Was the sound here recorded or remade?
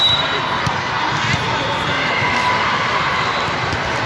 recorded